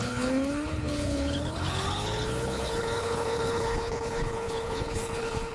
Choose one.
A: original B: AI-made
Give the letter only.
B